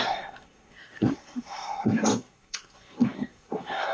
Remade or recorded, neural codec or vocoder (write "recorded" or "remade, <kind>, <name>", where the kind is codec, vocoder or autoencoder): remade, codec, SNAC